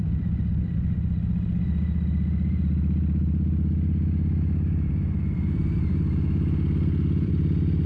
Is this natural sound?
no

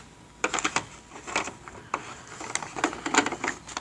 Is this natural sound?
yes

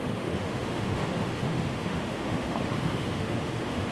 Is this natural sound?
no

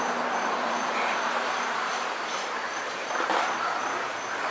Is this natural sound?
no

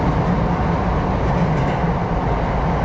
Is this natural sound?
yes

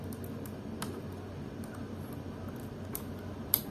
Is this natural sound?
yes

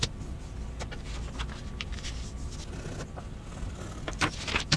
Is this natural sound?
yes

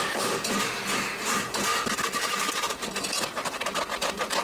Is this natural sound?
yes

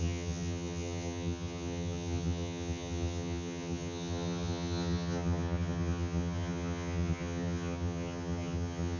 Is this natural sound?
no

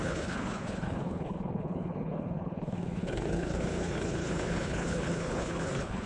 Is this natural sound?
no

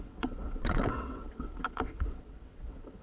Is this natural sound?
no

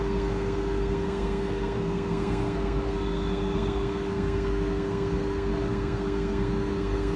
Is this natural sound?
no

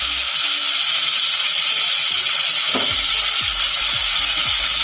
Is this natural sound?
yes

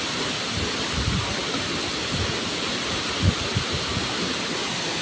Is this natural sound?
yes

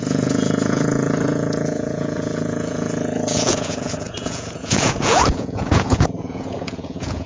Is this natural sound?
no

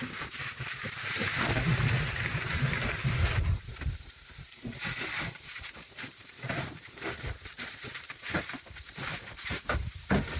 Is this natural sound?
no